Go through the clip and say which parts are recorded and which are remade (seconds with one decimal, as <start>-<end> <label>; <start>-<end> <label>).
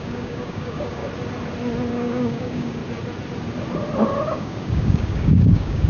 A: 0.0-1.0 remade; 1.0-1.9 recorded; 1.9-2.8 remade; 2.8-4.3 recorded; 4.3-5.9 remade